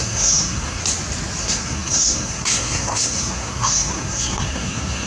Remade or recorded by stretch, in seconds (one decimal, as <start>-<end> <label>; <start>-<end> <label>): 0.0-0.8 remade; 0.8-1.4 recorded; 1.4-5.1 remade